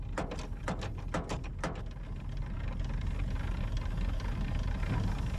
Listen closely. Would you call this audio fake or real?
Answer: real